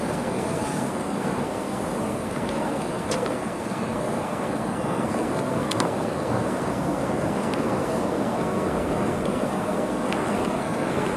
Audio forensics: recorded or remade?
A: remade